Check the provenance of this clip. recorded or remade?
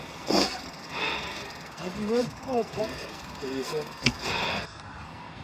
remade